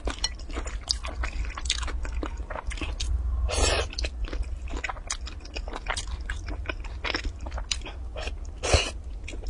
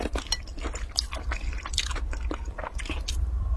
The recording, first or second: first